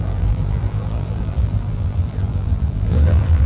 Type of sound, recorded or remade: remade